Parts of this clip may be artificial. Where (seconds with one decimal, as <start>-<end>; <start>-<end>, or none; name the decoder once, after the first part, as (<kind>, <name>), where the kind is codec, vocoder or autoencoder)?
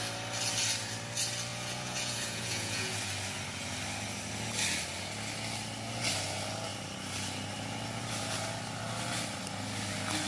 1.5-3.0 (vocoder, Vocos)